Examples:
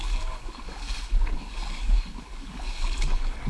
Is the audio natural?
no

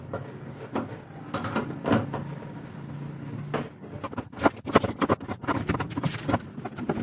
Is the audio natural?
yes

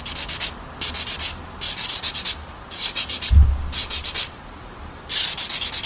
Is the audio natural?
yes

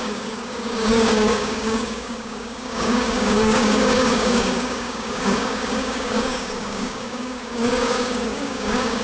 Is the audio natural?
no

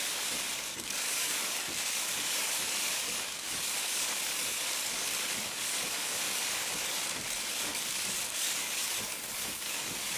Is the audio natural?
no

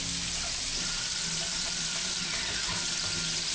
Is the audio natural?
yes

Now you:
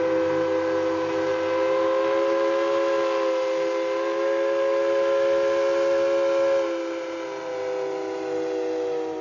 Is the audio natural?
yes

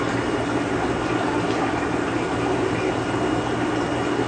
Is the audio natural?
yes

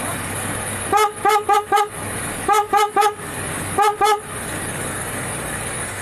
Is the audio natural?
no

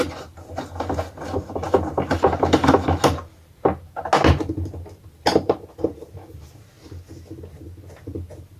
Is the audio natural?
yes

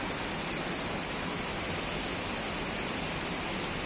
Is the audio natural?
yes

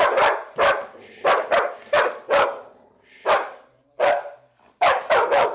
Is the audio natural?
yes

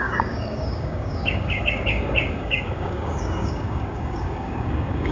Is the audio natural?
no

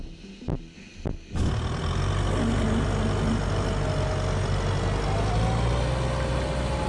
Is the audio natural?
yes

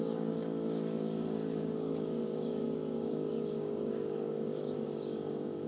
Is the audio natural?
no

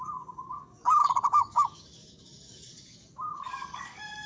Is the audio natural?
no